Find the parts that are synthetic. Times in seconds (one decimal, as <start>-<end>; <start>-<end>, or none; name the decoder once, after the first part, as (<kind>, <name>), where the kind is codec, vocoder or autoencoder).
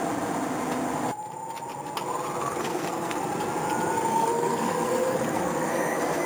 2.4-3.2 (codec, SNAC); 4.1-6.3